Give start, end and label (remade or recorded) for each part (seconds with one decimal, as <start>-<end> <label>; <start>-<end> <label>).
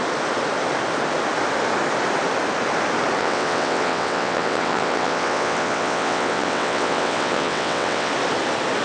0.0-3.2 recorded; 3.2-8.1 remade; 8.1-8.8 recorded